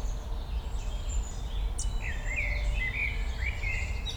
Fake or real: real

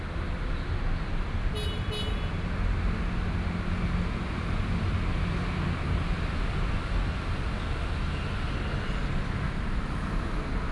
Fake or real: real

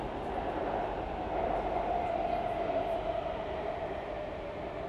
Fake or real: real